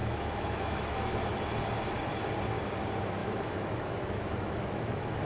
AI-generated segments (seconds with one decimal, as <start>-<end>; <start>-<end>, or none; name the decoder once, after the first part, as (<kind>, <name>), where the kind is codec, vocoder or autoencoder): 0.0-1.4 (autoencoder, DAC-VAE); 3.2-5.2